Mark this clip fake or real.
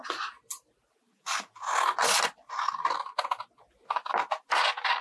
real